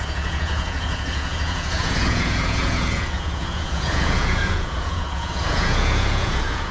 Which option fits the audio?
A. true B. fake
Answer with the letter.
B